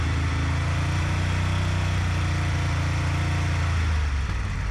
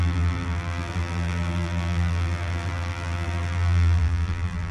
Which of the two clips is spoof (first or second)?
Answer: second